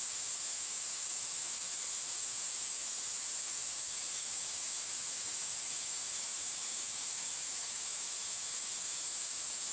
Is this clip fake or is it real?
fake